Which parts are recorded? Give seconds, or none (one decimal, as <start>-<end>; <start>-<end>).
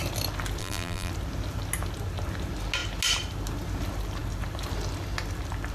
0.0-0.6; 1.1-5.7